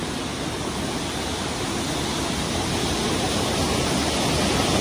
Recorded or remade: recorded